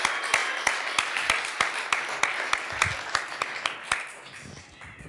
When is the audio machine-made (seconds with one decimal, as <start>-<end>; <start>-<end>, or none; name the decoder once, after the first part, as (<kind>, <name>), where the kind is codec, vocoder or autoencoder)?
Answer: none

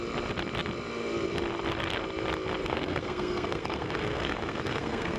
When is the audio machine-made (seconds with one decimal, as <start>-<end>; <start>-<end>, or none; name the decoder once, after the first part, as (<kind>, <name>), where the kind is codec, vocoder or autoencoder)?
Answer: 2.6-5.2 (codec, SNAC)

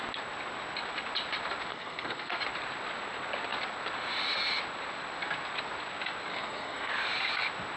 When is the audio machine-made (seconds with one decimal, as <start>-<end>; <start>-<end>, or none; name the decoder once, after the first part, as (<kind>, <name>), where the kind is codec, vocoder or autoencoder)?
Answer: 1.7-2.4 (codec, SNAC); 6.3-6.9

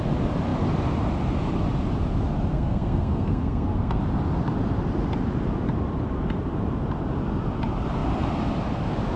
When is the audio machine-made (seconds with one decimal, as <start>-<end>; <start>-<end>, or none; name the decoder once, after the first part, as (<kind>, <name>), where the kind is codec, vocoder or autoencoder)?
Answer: 2.5-4.0 (codec, SNAC)

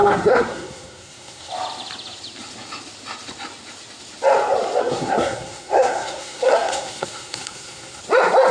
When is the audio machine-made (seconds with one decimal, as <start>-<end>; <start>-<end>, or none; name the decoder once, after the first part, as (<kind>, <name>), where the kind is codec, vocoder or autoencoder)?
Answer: 0.0-1.5 (codec, SNAC); 4.8-8.0

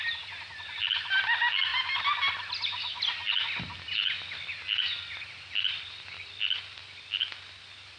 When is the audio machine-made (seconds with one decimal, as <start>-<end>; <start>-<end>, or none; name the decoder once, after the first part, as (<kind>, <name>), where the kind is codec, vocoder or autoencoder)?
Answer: none

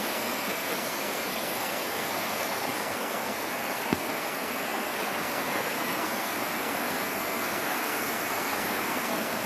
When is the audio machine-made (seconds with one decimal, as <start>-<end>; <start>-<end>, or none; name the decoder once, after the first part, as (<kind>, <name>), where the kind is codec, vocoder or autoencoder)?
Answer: 0.0-9.5 (codec, SNAC)